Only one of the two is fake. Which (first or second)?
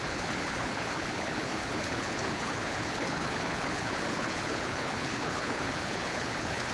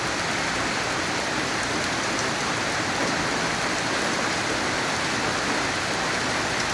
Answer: first